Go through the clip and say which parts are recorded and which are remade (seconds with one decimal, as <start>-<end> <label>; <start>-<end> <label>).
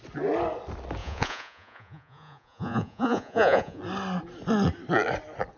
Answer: 0.0-1.0 recorded; 1.0-3.8 remade; 3.8-5.6 recorded